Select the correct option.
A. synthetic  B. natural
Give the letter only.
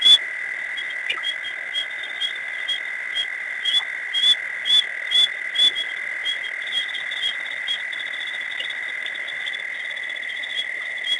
B